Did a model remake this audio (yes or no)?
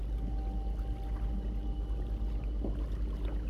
no